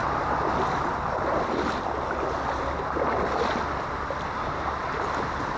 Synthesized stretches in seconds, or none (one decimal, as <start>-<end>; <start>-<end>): none